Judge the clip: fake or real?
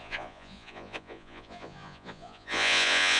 fake